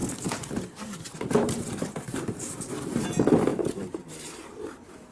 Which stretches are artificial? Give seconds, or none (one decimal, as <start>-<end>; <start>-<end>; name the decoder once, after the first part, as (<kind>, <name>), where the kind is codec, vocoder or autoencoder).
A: 0.0-3.1 (vocoder, BigVGAN v2); 3.5-5.1